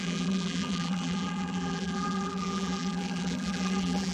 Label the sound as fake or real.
fake